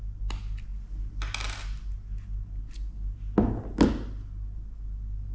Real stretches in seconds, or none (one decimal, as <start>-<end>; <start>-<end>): 0.0-5.3